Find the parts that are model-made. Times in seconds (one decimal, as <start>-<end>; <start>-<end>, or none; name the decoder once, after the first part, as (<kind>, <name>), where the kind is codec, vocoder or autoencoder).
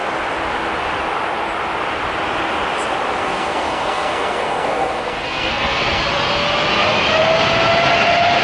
3.2-6.0 (codec, SNAC)